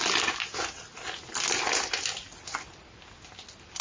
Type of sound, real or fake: real